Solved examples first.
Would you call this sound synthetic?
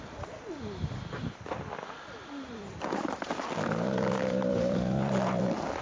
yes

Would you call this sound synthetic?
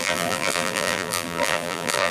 yes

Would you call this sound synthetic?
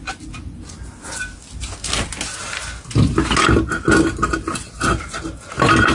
no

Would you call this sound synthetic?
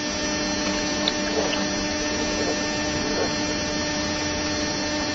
no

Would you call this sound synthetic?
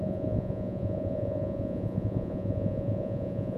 yes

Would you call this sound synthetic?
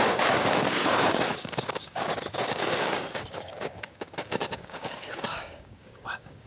yes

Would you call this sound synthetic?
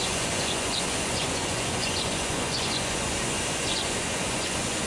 yes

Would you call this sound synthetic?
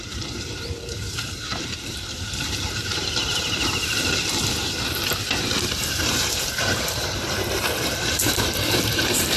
yes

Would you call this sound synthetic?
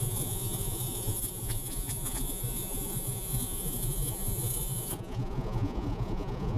yes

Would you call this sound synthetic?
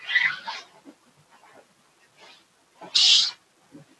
no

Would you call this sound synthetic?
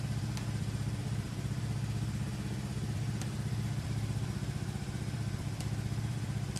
yes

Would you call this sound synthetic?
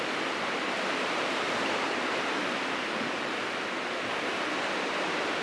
yes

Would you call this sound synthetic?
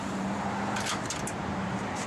yes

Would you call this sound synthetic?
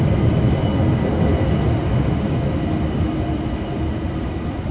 no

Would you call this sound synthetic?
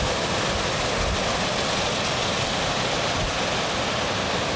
no